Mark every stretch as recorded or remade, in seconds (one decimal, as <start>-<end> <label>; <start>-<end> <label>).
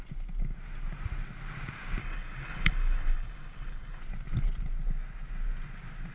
0.0-2.0 recorded; 2.0-4.0 remade; 4.0-6.1 recorded